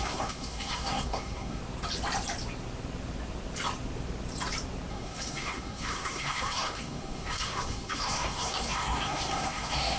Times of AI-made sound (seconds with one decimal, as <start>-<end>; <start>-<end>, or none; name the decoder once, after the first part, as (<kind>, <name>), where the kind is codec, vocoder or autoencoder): 0.0-1.6 (codec, SNAC); 4.9-10.0